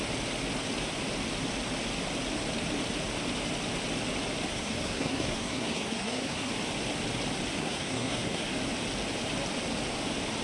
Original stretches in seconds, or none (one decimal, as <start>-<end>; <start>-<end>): 0.0-4.5; 6.5-7.6; 8.5-10.4